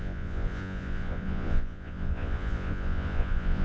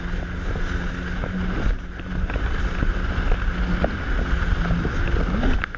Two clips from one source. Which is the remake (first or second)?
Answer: first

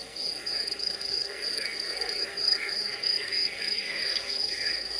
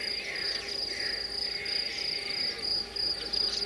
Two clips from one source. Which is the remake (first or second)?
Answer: first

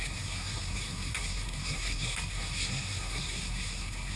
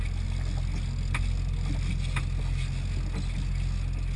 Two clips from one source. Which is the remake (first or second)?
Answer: first